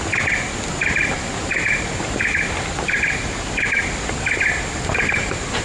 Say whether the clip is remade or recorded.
recorded